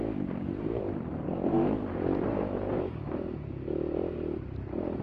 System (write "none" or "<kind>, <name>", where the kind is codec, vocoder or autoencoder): vocoder, BigVGAN v2